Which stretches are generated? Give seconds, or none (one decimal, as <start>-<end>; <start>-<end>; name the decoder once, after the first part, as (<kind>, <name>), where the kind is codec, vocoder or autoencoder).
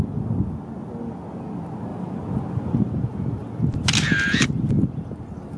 none